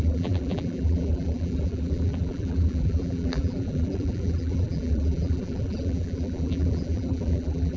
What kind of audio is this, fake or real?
fake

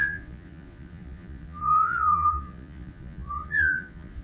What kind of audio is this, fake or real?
fake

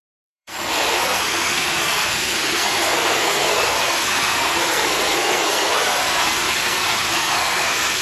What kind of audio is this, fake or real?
fake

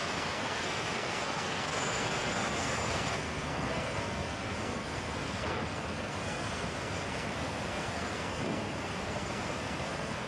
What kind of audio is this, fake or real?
fake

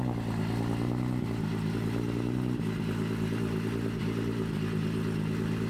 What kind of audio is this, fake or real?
real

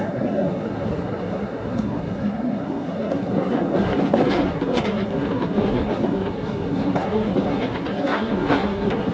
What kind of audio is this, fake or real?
fake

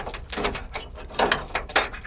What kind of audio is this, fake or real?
real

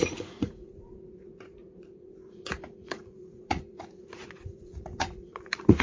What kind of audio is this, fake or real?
fake